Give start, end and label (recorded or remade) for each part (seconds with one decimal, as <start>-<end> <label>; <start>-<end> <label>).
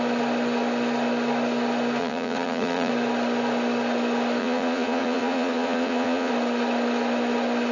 0.0-2.0 recorded; 2.0-2.9 remade; 2.9-4.4 recorded; 4.4-6.3 remade; 6.3-7.7 recorded